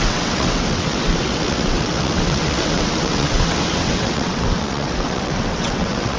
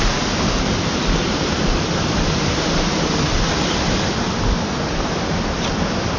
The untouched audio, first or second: second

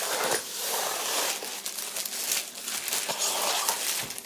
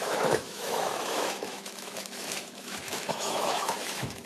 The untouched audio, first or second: first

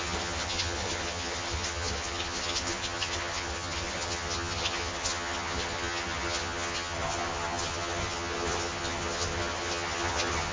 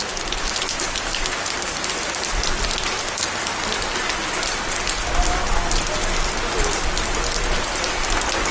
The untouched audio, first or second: second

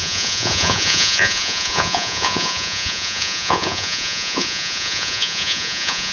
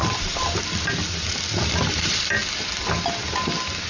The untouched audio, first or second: second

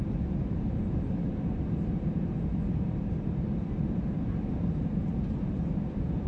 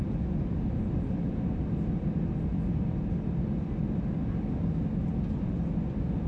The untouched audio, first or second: second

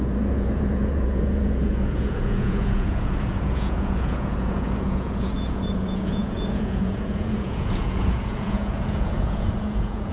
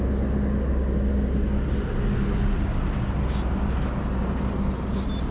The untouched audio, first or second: second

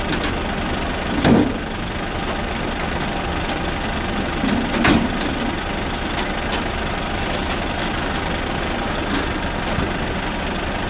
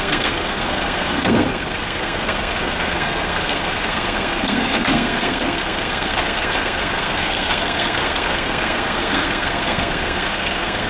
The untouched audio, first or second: first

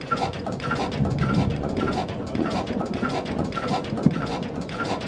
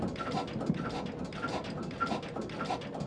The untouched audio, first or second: second